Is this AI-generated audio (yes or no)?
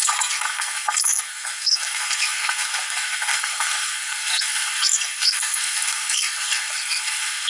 yes